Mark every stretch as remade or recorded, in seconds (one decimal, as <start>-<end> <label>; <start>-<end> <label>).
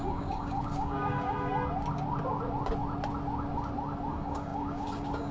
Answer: 0.0-1.5 remade; 1.5-4.1 recorded; 4.1-5.3 remade